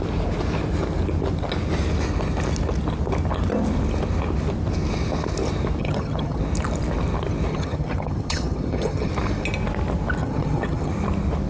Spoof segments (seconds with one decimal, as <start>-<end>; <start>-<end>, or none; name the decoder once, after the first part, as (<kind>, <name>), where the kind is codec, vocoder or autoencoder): 5.8-6.4 (vocoder, HiFi-GAN); 7.5-9.1; 10.2-10.9

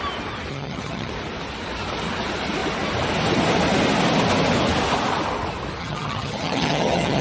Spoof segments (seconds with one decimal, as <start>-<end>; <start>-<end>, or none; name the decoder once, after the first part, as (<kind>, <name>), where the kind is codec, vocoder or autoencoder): 0.5-1.1 (vocoder, HiFi-GAN); 5.8-7.2

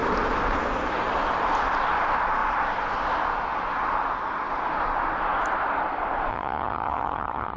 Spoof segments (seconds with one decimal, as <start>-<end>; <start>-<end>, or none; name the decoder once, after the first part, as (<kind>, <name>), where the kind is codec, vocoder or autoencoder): 6.3-7.6 (vocoder, HiFi-GAN)

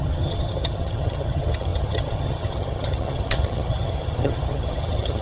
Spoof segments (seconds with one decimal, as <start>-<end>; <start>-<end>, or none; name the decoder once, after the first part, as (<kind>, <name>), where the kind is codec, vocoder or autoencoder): 0.0-5.2 (vocoder, HiFi-GAN)

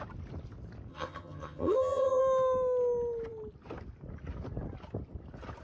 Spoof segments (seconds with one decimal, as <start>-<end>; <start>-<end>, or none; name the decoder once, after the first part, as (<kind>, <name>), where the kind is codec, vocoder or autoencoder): 0.9-2.2 (vocoder, HiFi-GAN)

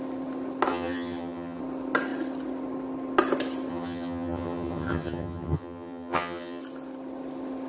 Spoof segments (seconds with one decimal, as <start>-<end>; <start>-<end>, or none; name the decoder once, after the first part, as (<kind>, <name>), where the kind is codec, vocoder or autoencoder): 0.7-1.6 (vocoder, HiFi-GAN); 3.7-6.6

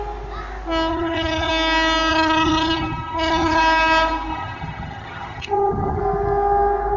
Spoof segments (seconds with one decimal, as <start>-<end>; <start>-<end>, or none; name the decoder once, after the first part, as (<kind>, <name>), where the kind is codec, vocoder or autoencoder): 0.9-1.5 (vocoder, HiFi-GAN); 2.1-3.6; 4.3-6.0